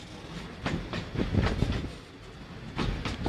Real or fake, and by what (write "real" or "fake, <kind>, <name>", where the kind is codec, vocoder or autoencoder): real